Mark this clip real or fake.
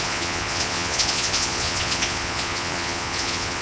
fake